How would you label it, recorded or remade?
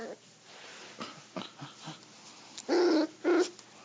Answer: recorded